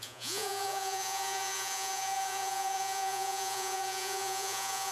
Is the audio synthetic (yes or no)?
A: yes